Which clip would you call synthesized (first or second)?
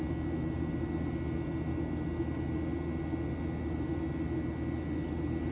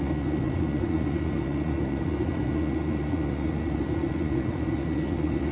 second